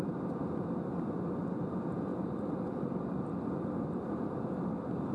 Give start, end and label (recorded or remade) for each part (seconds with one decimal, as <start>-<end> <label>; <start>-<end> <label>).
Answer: 0.0-2.1 recorded; 2.1-5.1 remade

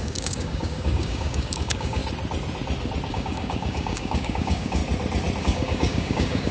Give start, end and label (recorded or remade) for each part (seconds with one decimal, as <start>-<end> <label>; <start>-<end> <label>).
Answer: 0.0-2.0 remade; 2.0-3.1 recorded; 3.1-4.8 remade; 4.8-5.4 recorded; 5.4-6.5 remade

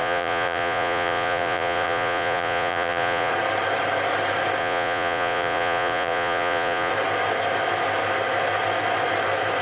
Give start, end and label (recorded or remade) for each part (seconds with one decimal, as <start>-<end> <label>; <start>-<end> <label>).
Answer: 0.0-3.3 remade; 3.3-4.6 recorded; 4.6-6.9 remade; 6.9-9.6 recorded

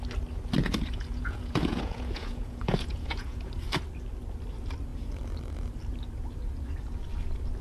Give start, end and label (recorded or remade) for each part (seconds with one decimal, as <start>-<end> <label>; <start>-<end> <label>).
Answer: 0.0-0.6 recorded; 0.6-3.5 remade; 3.5-7.6 recorded

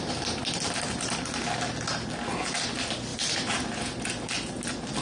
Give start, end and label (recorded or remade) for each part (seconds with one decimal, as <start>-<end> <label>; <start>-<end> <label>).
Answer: 0.0-3.1 recorded; 3.1-4.0 remade; 4.0-5.0 recorded

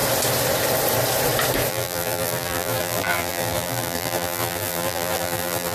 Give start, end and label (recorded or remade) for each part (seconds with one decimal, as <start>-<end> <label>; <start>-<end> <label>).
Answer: 0.0-1.7 recorded; 1.7-5.7 remade